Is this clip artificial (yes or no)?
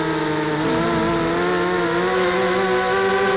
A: no